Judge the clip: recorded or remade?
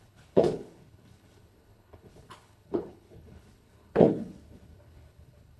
remade